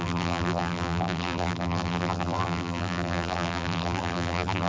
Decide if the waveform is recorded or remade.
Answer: remade